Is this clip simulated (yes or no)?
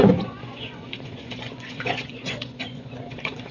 yes